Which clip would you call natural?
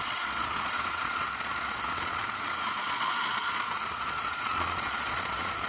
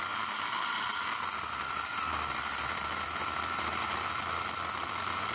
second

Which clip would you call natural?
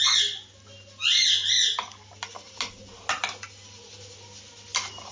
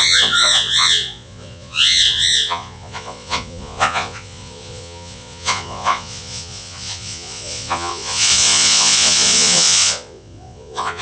first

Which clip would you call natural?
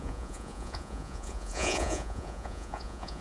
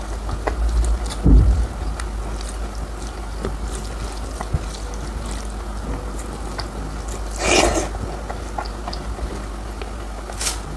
second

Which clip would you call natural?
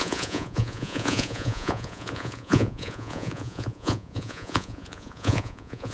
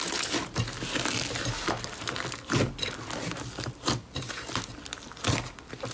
second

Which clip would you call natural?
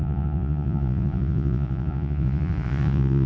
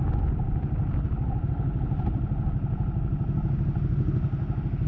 second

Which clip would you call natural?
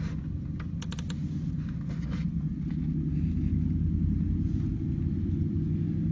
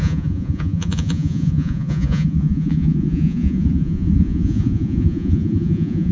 first